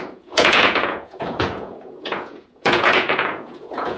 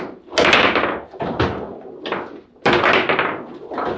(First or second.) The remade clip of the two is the first